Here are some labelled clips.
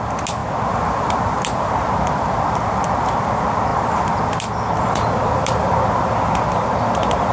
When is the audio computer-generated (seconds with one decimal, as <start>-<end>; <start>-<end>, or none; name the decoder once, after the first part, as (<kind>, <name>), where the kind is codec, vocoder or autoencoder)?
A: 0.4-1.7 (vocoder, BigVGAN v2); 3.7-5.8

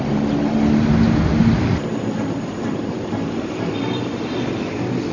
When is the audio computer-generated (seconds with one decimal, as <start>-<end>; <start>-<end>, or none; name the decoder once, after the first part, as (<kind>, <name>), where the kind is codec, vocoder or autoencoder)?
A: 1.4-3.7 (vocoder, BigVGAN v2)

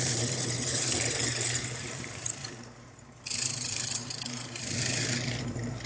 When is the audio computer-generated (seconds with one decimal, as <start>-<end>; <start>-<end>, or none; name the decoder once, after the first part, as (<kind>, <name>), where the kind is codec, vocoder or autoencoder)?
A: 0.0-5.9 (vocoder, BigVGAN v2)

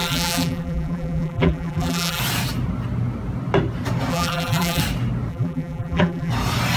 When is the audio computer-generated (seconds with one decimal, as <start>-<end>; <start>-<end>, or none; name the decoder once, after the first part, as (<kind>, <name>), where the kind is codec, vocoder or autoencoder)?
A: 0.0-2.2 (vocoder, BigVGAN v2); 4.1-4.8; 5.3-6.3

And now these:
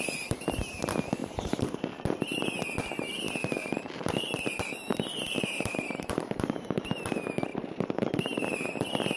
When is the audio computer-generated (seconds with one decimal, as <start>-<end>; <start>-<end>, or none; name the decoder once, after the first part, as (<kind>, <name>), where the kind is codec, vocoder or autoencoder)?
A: 1.2-2.0 (vocoder, BigVGAN v2); 3.6-6.8; 7.5-8.7

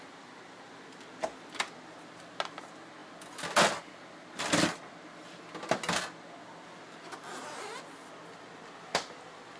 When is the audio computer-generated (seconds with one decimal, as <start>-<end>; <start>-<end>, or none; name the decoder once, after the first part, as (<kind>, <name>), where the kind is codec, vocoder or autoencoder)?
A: none